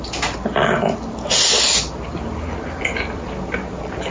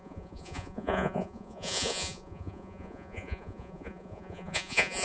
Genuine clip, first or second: first